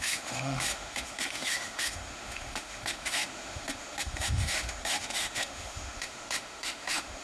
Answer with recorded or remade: remade